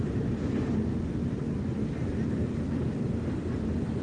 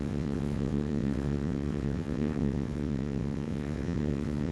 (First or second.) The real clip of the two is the first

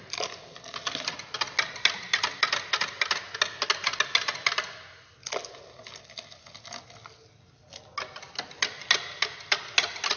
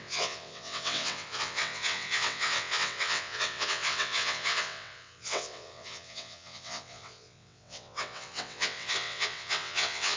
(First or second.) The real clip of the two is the first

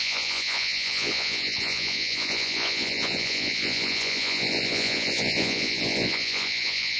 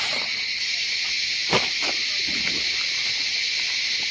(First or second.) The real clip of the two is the second